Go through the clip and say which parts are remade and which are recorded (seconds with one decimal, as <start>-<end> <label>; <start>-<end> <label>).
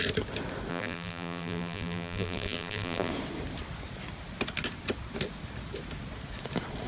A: 0.0-0.7 recorded; 0.7-3.1 remade; 3.1-6.9 recorded